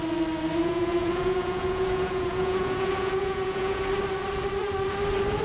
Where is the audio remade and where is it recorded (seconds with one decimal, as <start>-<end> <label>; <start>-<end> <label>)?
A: 0.0-0.6 recorded; 0.6-3.8 remade; 3.8-5.4 recorded